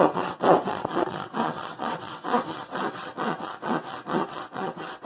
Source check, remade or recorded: remade